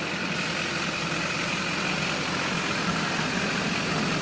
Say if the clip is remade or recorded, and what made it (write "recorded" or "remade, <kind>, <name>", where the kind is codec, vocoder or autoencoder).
recorded